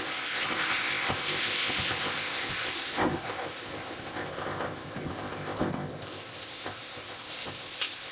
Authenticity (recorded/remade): remade